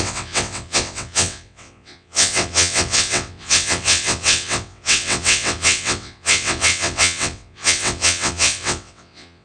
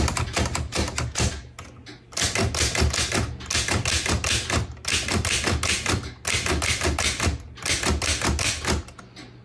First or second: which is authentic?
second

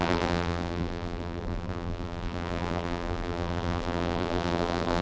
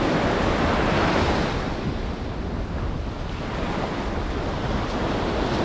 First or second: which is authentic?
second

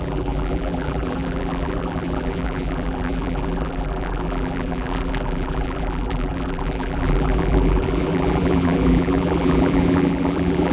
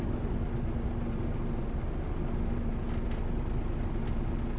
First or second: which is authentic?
second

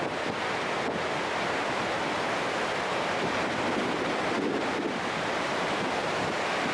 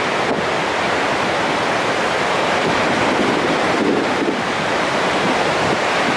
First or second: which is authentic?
first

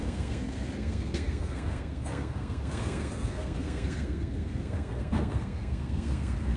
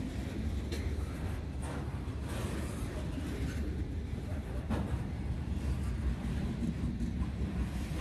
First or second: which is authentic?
second